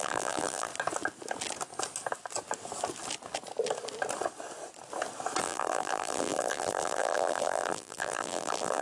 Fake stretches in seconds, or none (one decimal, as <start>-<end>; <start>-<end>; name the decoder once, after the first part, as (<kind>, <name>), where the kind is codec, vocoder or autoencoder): 0.0-0.7 (vocoder, BigVGAN v2); 5.4-8.8